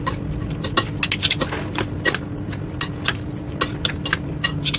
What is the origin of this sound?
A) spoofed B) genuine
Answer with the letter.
B